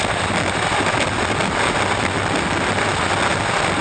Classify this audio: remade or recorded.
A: recorded